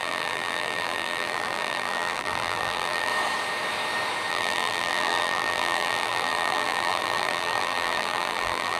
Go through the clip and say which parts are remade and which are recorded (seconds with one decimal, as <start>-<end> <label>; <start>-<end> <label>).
0.0-3.1 remade; 3.1-4.3 recorded; 4.3-8.8 remade